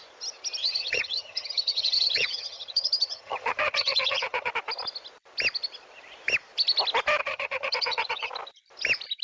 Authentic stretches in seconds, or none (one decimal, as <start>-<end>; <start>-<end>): 0.0-0.6; 4.5-7.2; 8.3-9.2